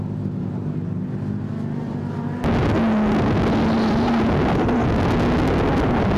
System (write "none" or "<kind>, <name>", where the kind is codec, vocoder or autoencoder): none